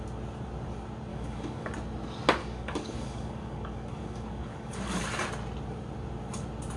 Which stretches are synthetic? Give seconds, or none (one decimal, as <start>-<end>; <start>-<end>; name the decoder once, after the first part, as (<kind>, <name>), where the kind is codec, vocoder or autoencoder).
1.1-1.7 (codec, DAC); 2.4-5.0